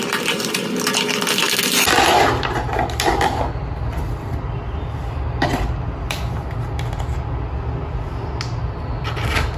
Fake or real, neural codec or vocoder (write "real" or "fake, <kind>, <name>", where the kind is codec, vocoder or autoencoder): real